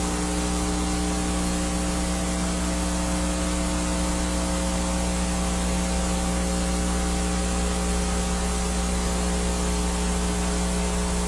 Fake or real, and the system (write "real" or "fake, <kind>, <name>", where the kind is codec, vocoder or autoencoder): real